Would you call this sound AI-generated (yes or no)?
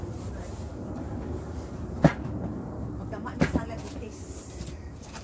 yes